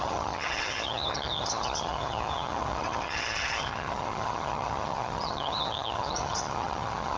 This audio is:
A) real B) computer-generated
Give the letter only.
B